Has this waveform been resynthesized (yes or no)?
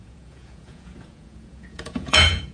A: yes